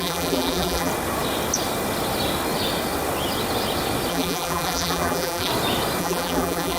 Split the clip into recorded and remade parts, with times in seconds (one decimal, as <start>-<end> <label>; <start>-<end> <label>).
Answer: 0.0-0.9 remade; 0.9-4.1 recorded; 4.1-5.5 remade; 5.5-6.0 recorded; 6.0-6.8 remade